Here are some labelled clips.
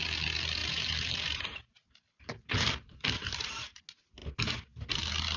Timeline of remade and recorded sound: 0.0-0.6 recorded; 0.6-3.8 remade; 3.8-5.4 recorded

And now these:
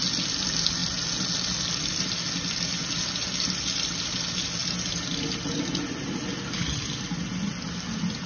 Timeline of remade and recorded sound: 0.0-8.3 recorded

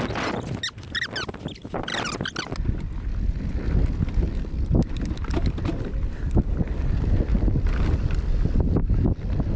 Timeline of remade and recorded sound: 0.0-9.6 recorded

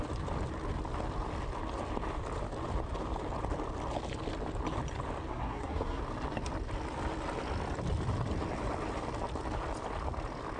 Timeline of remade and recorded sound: 0.0-5.3 recorded; 5.3-6.0 remade; 6.0-10.6 recorded

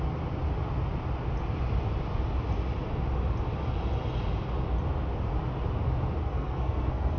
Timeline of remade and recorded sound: 0.0-6.2 recorded; 6.2-7.2 remade

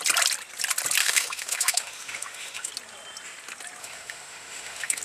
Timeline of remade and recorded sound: 0.0-1.0 recorded; 1.0-2.7 remade; 2.7-3.8 recorded; 3.8-5.0 remade